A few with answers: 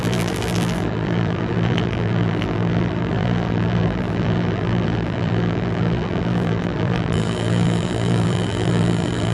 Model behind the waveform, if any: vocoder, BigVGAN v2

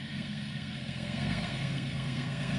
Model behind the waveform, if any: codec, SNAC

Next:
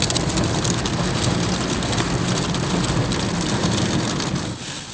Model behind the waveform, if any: none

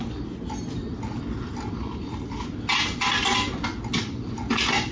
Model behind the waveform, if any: none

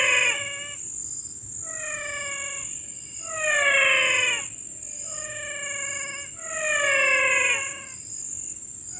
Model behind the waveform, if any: none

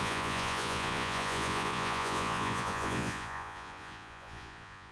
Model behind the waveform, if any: vocoder, Vocos